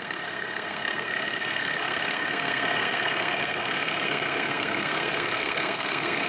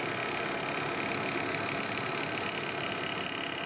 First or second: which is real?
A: second